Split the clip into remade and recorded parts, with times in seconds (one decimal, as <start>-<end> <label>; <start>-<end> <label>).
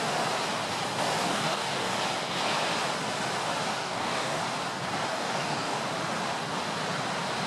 0.0-1.2 recorded; 1.2-2.0 remade; 2.0-3.8 recorded; 3.8-4.4 remade; 4.4-5.1 recorded; 5.1-5.8 remade; 5.8-7.5 recorded